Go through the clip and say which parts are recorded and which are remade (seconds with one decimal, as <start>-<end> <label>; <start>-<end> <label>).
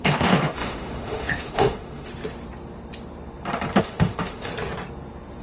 0.0-2.1 remade; 2.1-3.8 recorded; 3.8-4.5 remade; 4.5-5.4 recorded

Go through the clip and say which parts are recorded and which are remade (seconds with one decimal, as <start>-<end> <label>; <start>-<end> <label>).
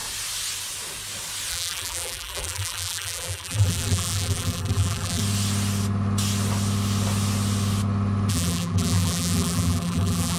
0.0-1.5 recorded; 1.5-5.2 remade; 5.2-8.3 recorded; 8.3-10.4 remade